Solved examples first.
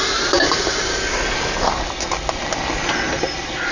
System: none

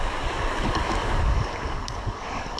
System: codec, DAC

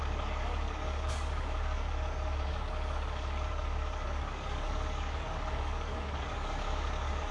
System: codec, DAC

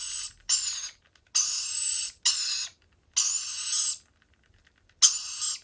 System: none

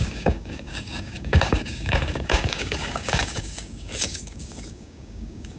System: codec, DAC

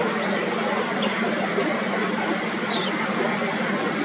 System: none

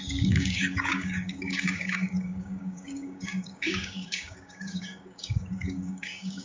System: codec, DAC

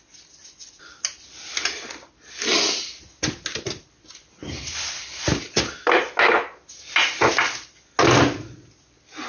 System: none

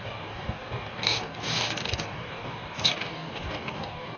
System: codec, DAC